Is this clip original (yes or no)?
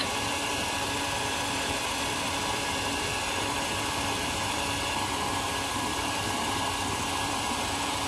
no